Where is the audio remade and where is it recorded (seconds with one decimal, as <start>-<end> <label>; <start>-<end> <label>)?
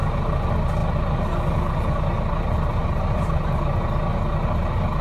0.0-2.8 recorded; 2.8-3.5 remade; 3.5-5.0 recorded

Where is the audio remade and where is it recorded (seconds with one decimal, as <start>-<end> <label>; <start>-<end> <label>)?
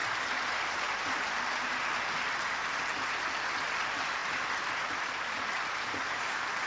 0.0-4.2 recorded; 4.2-5.1 remade; 5.1-6.7 recorded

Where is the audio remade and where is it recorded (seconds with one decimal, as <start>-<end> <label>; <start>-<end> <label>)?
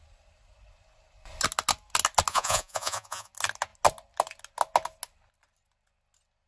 0.0-2.3 recorded; 2.3-3.3 remade; 3.3-6.5 recorded